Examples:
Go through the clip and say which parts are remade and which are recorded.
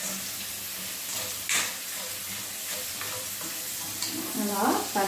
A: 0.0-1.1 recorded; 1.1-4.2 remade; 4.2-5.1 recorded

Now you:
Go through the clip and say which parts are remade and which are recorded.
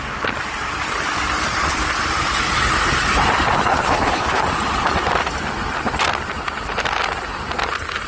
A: 0.0-3.7 recorded; 3.7-4.4 remade; 4.4-8.1 recorded